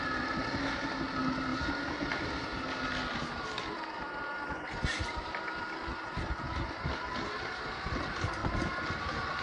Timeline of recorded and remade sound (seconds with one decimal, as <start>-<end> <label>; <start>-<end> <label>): 0.0-9.4 recorded